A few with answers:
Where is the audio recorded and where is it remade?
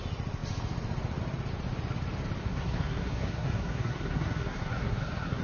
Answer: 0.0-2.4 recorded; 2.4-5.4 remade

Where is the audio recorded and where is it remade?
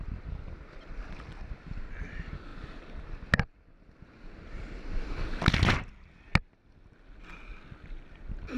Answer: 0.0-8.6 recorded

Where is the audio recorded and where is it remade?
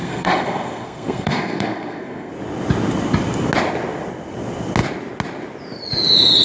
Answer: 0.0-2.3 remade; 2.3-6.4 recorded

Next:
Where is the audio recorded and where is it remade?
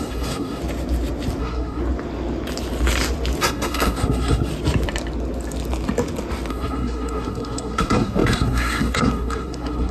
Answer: 0.0-0.6 remade; 0.6-1.4 recorded; 1.4-1.8 remade; 1.8-3.4 recorded; 3.4-4.5 remade; 4.5-6.5 recorded; 6.5-9.9 remade